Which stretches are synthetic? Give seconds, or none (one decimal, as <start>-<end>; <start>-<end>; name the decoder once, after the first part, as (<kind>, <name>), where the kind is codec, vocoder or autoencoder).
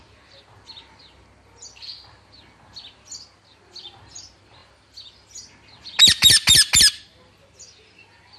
none